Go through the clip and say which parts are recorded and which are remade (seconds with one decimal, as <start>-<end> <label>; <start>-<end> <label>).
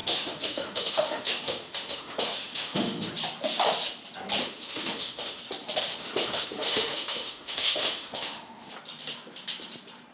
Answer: 0.0-3.1 remade; 3.1-4.4 recorded; 4.4-5.4 remade; 5.4-5.9 recorded; 5.9-8.7 remade; 8.7-10.1 recorded